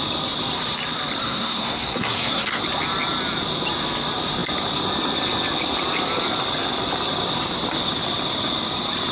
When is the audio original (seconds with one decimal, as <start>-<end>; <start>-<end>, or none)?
0.0-1.2; 2.6-9.1